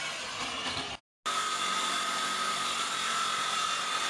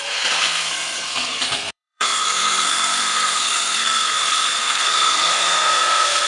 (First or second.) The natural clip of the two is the first